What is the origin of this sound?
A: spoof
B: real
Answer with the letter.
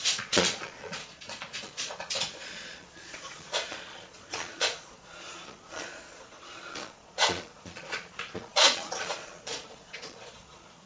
A